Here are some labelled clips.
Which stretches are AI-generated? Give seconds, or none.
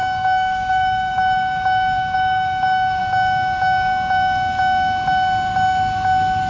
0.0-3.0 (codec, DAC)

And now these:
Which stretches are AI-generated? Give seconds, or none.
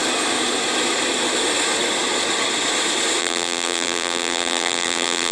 3.2-5.3 (vocoder, BigVGAN v2)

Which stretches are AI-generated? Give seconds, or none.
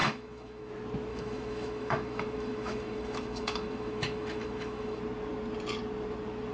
0.0-0.7 (autoencoder, DAC-VAE); 1.1-5.0